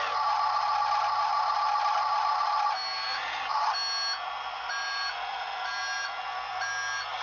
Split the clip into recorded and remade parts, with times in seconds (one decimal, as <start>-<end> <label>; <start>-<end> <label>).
0.0-7.2 recorded